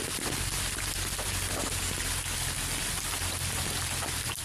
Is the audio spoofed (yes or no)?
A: no